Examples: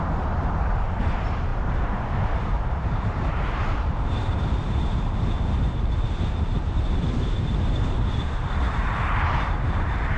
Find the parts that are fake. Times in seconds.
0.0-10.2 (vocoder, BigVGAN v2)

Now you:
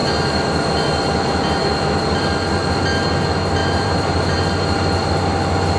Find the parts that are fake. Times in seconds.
3.6-4.4 (vocoder, BigVGAN v2)

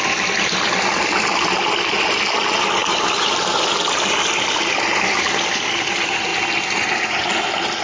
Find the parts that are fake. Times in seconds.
0.0-6.3 (vocoder, BigVGAN v2); 6.9-7.8

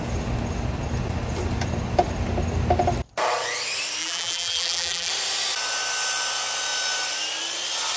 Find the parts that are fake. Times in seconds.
4.0-5.1 (vocoder, BigVGAN v2)